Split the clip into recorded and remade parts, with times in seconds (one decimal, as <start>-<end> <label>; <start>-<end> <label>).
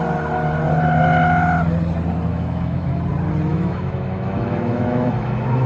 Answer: 0.0-2.3 recorded; 2.3-3.0 remade; 3.0-3.5 recorded; 3.5-5.7 remade